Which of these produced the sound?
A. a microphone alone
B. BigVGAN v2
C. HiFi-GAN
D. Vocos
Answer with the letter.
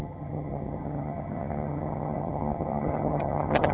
C